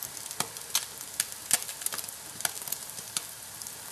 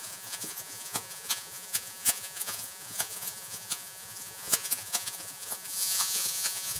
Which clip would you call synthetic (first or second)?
second